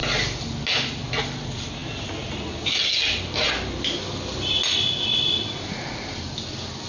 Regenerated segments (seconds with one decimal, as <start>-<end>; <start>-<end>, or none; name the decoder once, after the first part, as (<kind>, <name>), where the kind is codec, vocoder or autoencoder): none